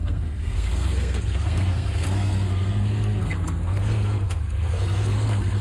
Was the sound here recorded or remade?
remade